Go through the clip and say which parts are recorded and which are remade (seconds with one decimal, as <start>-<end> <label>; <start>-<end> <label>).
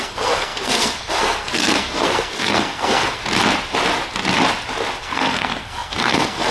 0.0-3.2 remade; 3.2-5.0 recorded; 5.0-6.5 remade